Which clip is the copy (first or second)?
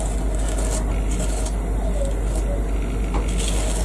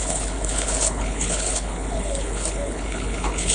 second